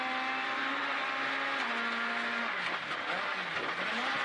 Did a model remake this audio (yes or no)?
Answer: no